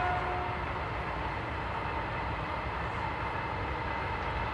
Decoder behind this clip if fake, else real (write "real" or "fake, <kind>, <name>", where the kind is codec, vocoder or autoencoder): real